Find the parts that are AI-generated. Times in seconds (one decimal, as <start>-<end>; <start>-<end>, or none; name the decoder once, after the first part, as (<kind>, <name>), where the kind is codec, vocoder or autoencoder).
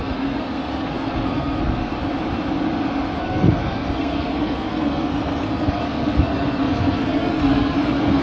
0.0-1.9 (codec, SNAC); 3.2-8.2